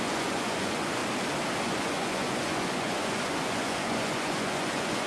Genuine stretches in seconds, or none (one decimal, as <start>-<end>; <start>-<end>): 1.0-1.6